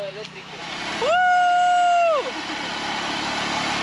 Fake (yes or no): no